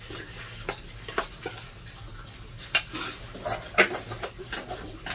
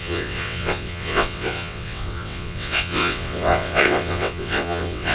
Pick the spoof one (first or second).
second